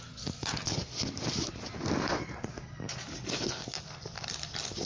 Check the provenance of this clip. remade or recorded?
recorded